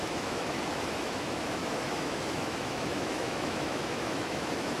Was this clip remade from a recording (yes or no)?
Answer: yes